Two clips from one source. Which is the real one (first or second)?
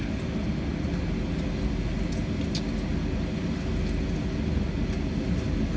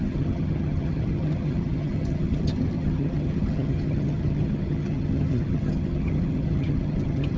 first